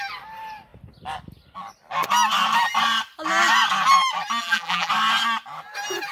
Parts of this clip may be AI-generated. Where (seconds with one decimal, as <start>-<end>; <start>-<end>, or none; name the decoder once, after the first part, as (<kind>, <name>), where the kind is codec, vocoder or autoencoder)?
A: 4.4-4.9 (vocoder, BigVGAN v2)